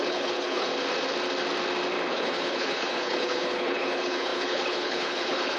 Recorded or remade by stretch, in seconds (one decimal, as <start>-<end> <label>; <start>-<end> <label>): 0.0-0.7 remade; 0.7-2.1 recorded; 2.1-5.6 remade